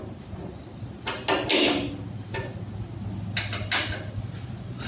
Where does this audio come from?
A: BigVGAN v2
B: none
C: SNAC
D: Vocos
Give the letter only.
B